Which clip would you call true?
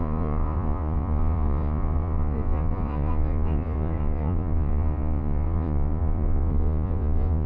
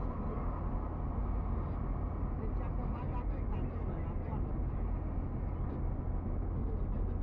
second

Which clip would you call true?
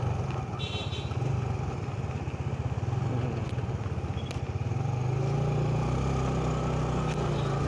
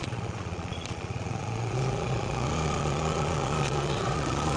first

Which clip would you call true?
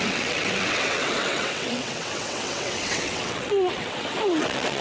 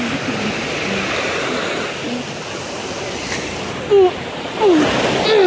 second